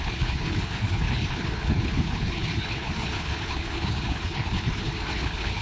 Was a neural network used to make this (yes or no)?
yes